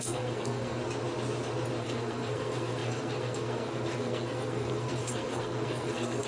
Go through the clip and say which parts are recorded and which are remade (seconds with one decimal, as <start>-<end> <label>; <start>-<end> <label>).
0.0-0.8 remade; 0.8-1.8 recorded; 1.8-6.3 remade